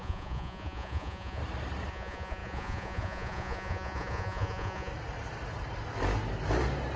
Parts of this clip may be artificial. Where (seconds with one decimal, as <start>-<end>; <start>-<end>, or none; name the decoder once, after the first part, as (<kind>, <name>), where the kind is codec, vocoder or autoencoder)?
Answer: 0.0-1.4 (vocoder, Vocos); 1.9-4.9